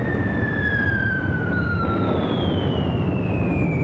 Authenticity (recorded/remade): remade